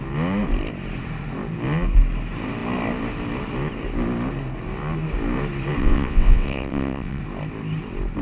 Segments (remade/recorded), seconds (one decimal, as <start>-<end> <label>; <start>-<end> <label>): 0.0-5.8 recorded; 5.8-7.2 remade; 7.2-8.2 recorded